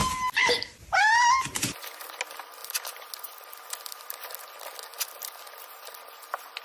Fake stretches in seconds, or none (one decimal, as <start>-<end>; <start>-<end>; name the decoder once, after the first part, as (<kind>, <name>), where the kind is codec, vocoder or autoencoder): none

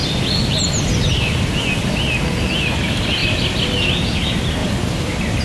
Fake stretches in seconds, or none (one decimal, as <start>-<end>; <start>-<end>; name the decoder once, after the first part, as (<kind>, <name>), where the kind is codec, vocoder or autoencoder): 0.0-0.7 (vocoder, BigVGAN v2); 3.2-3.7; 4.6-5.4

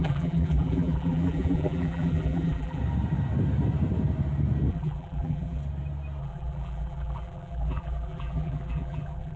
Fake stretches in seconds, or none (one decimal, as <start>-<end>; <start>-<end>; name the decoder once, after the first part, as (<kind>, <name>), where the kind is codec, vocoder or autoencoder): 0.0-2.8 (vocoder, BigVGAN v2); 4.7-5.6; 6.2-9.4

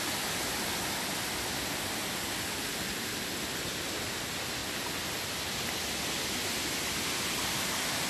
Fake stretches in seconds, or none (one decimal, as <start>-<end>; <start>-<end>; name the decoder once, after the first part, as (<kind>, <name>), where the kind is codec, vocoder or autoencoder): none

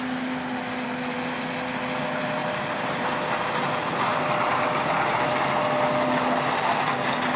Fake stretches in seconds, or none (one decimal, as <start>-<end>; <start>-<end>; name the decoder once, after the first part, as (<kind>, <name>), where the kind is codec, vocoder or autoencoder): none

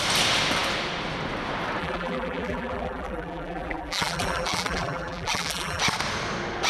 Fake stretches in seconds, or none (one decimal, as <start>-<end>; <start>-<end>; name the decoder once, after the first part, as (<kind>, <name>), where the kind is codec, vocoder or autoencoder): 1.8-5.8 (vocoder, BigVGAN v2)

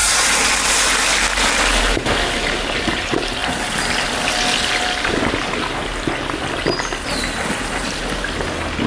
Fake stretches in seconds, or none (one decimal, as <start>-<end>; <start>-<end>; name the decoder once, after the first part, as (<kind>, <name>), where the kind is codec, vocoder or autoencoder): none

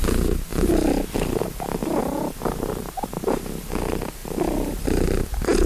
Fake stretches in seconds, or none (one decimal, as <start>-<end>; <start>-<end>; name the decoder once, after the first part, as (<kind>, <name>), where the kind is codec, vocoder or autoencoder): 1.8-3.4 (vocoder, BigVGAN v2); 4.2-5.2